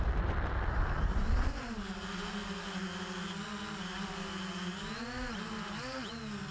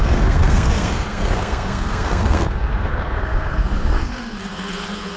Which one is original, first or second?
first